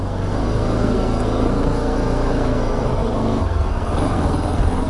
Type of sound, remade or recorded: remade